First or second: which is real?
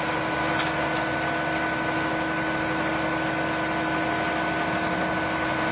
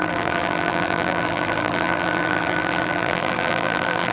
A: first